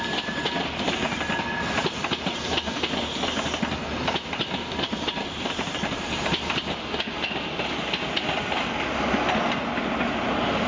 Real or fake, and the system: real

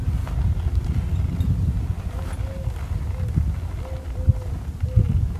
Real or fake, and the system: real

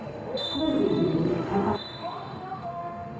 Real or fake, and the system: fake, autoencoder, DAC-VAE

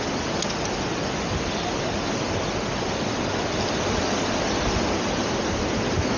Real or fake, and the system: real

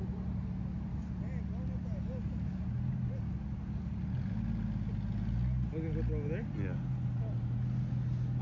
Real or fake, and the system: real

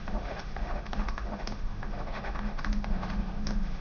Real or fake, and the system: fake, autoencoder, DAC-VAE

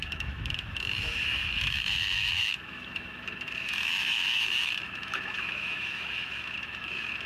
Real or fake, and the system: fake, autoencoder, DAC-VAE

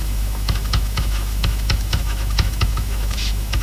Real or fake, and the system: fake, autoencoder, DAC-VAE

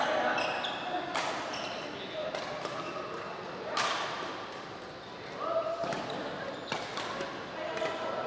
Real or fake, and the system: real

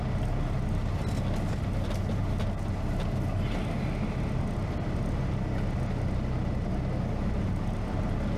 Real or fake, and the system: real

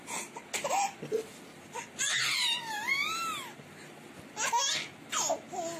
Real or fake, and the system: real